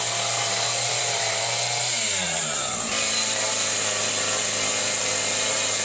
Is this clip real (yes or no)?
yes